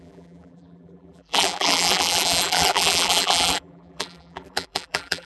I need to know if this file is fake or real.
fake